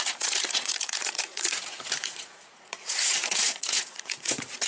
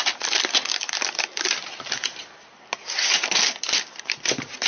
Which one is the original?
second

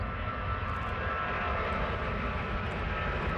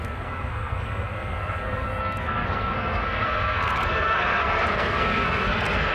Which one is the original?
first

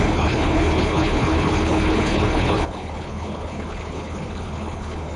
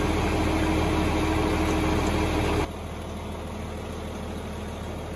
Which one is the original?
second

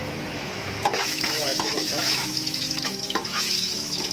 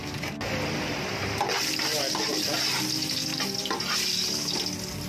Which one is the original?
second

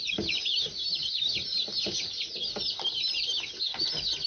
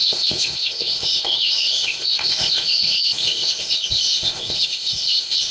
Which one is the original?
first